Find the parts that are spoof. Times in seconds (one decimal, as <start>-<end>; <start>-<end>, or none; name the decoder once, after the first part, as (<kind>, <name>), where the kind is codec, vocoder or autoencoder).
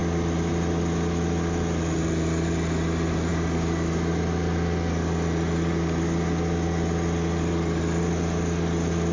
none